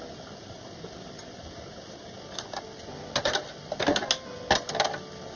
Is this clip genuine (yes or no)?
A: yes